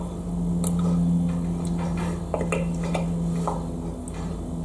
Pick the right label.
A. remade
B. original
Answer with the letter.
B